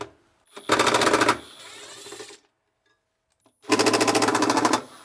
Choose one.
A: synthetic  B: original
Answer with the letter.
B